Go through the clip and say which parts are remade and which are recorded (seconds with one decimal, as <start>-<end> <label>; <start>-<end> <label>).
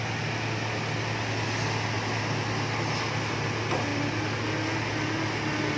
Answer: 0.0-5.8 recorded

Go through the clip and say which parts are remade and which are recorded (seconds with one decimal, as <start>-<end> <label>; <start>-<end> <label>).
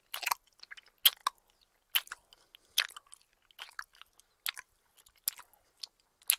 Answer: 0.0-6.4 recorded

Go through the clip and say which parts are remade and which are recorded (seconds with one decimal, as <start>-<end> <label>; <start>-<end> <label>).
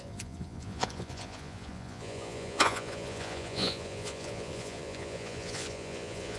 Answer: 0.0-6.4 remade